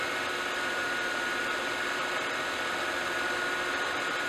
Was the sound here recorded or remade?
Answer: recorded